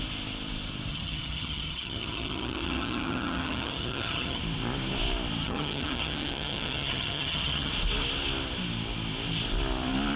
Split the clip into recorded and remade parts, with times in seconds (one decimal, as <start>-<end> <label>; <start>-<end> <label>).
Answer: 0.0-0.9 recorded; 0.9-4.4 remade; 4.4-5.4 recorded; 5.4-7.7 remade; 7.7-10.2 recorded